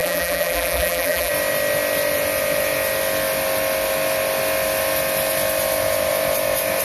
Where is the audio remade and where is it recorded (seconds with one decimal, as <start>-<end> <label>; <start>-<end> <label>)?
0.0-1.3 remade; 1.3-6.8 recorded